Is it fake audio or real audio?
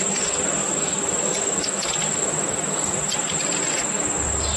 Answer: real